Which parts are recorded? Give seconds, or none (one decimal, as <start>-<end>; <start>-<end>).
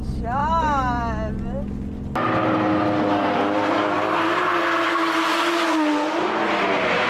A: 0.0-7.1